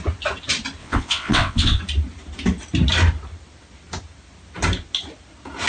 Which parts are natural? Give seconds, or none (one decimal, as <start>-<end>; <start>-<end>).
0.0-0.8; 1.8-5.7